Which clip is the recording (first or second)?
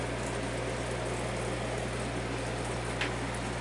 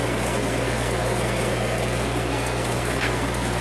first